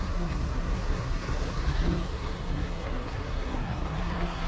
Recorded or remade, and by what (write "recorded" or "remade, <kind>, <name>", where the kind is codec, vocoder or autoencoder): remade, codec, SNAC